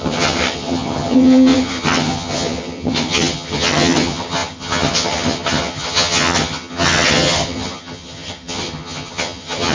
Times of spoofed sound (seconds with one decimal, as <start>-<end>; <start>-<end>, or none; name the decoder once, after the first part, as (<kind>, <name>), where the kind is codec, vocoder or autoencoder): 0.0-9.7 (vocoder, HiFi-GAN)